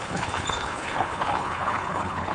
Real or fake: fake